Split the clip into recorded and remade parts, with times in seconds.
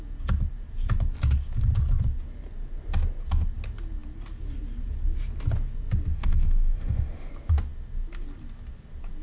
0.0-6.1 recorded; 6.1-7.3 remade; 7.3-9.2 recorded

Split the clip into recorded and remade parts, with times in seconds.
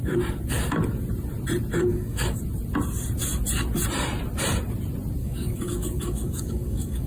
0.0-1.9 recorded; 1.9-2.4 remade; 2.4-5.2 recorded; 5.2-7.1 remade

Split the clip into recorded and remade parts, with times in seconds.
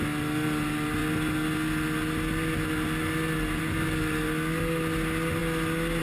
0.0-6.0 recorded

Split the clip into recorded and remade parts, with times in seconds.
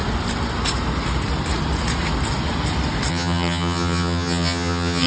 0.0-3.1 recorded; 3.1-5.1 remade